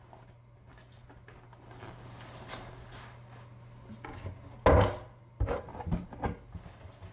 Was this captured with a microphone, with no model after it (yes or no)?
yes